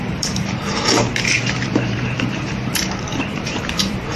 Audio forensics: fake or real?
fake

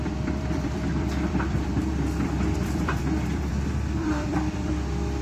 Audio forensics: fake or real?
fake